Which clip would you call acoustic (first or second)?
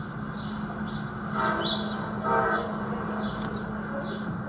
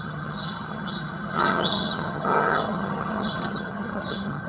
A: first